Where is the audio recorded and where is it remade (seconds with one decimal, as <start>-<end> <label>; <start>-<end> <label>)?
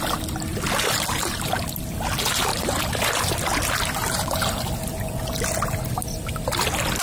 0.0-0.5 recorded; 0.5-1.8 remade; 1.8-7.0 recorded